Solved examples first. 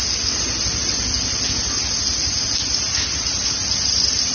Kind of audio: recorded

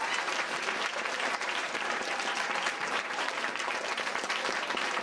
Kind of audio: remade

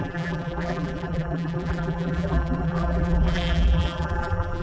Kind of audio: remade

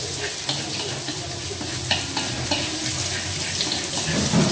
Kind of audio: recorded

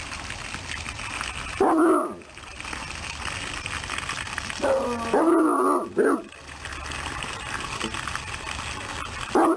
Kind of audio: recorded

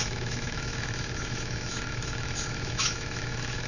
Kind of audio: remade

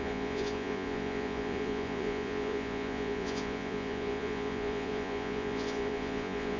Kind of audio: remade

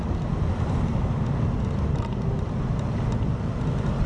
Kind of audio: recorded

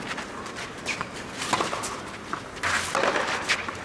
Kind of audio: recorded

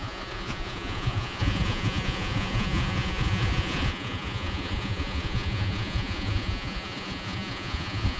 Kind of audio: remade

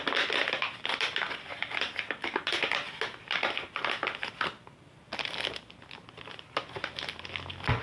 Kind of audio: recorded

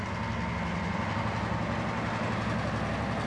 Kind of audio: recorded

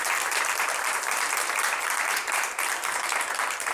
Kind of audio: remade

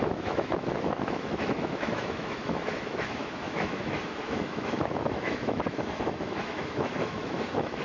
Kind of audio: remade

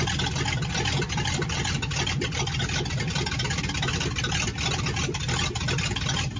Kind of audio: recorded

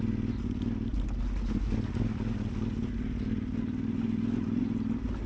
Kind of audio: recorded